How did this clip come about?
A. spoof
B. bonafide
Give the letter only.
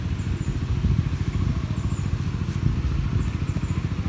B